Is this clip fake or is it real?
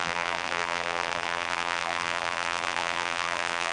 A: fake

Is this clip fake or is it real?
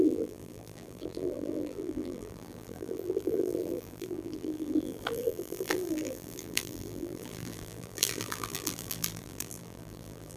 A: fake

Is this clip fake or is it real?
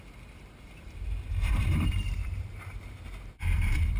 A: fake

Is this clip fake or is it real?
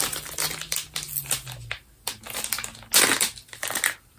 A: real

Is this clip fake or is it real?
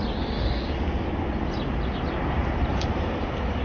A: real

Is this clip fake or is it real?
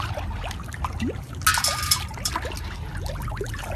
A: real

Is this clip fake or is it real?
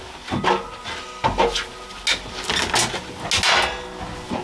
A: real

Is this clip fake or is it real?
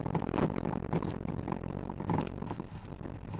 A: real